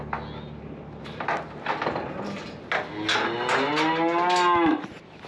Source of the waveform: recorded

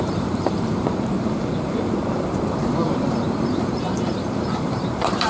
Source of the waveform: remade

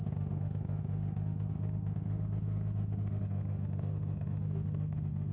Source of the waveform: remade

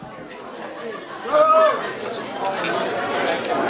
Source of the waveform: recorded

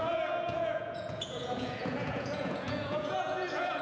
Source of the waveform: remade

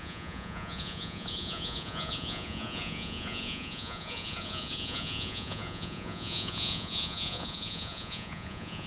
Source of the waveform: remade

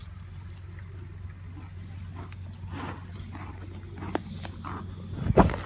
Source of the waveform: recorded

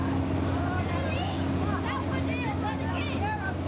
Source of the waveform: recorded